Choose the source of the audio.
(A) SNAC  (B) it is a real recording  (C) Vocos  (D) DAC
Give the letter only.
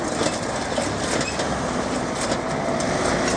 B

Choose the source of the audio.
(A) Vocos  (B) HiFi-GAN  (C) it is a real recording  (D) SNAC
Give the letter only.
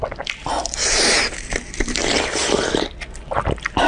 C